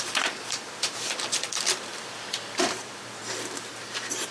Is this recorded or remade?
remade